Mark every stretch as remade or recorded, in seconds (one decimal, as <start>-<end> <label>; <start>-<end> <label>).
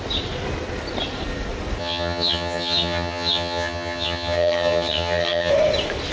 0.0-1.8 recorded; 1.8-5.5 remade; 5.5-6.1 recorded